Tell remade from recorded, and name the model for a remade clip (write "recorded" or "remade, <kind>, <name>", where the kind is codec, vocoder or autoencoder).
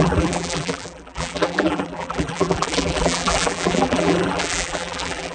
remade, vocoder, BigVGAN v2